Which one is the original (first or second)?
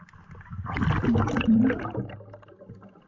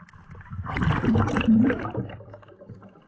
first